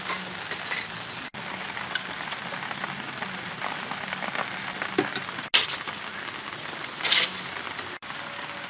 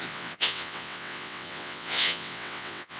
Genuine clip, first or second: first